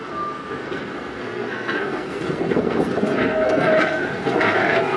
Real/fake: fake